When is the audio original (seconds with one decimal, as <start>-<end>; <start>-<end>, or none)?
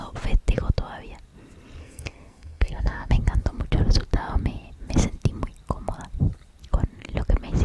0.0-1.8; 3.1-7.6